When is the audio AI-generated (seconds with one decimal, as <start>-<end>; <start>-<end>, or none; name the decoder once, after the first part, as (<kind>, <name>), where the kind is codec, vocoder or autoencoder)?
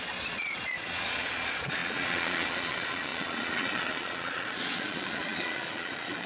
0.0-6.3 (vocoder, Vocos)